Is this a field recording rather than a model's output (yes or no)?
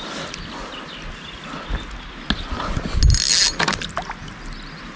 yes